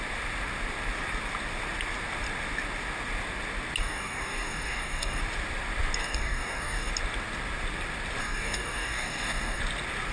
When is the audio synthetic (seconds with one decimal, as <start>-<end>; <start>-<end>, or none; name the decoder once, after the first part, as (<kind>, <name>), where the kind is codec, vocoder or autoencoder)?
3.8-5.2 (codec, DAC); 6.0-6.9; 8.2-9.6